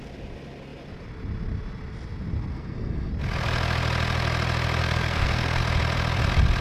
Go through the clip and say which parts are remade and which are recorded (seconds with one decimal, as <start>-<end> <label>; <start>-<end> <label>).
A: 0.0-2.5 recorded; 2.5-3.1 remade; 3.1-4.8 recorded; 4.8-5.6 remade; 5.6-6.6 recorded